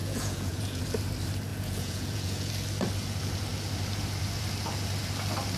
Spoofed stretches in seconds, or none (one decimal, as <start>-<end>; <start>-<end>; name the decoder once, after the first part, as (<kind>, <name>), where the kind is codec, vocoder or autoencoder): 0.0-0.8 (vocoder, Vocos); 1.5-2.5